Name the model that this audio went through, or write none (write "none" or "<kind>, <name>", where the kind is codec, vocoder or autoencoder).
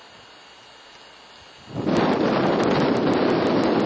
none